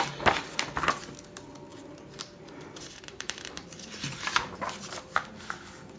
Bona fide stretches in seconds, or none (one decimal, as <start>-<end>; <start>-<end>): 0.0-1.7; 5.3-6.0